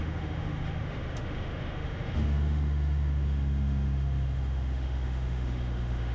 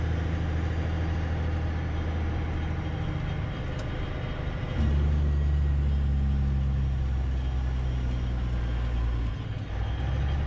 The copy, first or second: first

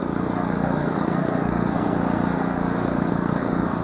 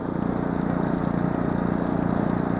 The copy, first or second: first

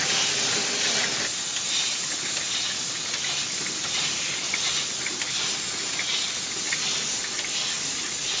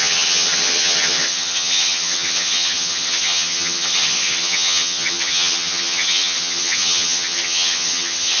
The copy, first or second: second